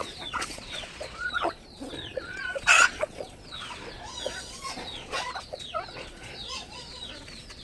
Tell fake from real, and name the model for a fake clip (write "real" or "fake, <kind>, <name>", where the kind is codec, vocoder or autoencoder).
fake, vocoder, Vocos